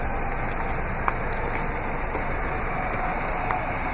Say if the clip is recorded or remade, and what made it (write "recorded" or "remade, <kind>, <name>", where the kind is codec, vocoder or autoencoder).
recorded